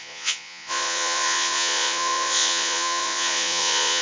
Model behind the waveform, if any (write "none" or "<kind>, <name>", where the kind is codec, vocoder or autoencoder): vocoder, Vocos